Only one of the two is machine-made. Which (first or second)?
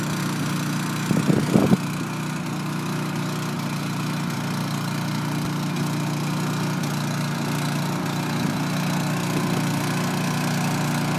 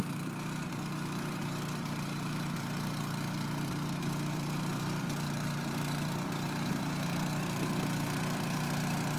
second